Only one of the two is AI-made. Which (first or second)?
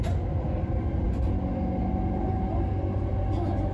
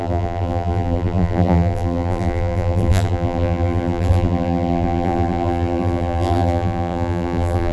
second